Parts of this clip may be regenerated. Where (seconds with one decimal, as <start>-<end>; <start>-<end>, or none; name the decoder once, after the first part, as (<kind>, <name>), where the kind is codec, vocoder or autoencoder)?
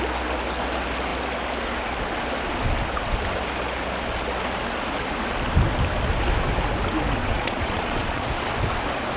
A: 7.2-8.3 (vocoder, Vocos)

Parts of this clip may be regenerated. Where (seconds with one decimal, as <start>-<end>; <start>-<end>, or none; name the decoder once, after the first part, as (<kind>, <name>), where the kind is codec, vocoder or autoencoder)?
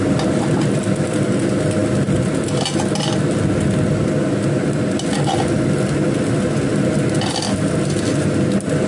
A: none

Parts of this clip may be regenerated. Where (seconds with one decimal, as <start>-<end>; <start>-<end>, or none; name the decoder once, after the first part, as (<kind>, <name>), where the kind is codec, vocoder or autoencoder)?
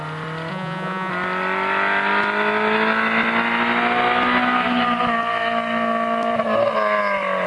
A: 0.5-1.1 (vocoder, Vocos)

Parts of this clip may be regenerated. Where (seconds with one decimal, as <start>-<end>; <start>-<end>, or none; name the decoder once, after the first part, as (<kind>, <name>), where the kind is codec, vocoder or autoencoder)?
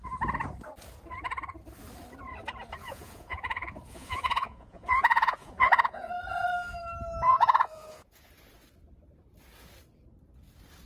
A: 2.8-6.1 (vocoder, Vocos); 7.3-8.3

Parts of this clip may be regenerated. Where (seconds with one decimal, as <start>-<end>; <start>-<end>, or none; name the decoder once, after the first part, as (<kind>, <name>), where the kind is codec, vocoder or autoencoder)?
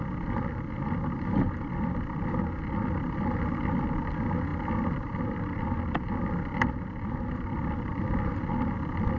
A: none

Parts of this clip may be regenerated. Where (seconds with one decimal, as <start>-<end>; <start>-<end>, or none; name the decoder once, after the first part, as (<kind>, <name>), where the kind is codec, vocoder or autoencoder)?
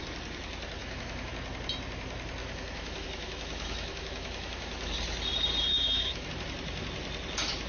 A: 0.8-1.3 (autoencoder, DAC-VAE); 2.4-4.9; 5.7-6.3